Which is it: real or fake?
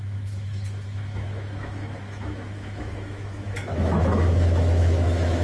fake